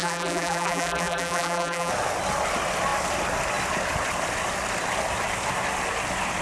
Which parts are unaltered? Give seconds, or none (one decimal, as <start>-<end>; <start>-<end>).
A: 1.9-6.4